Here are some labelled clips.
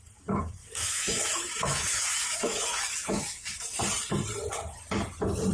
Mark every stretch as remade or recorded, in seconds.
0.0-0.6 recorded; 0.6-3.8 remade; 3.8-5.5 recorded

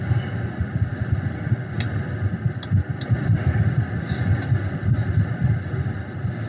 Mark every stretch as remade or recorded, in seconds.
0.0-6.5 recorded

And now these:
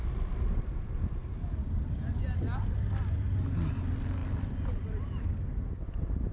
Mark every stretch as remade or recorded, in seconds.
0.0-6.3 recorded